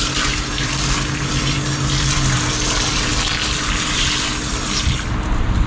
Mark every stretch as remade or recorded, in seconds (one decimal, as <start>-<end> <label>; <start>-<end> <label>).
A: 0.0-5.7 recorded